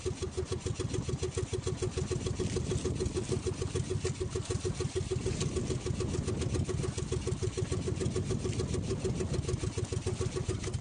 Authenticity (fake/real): real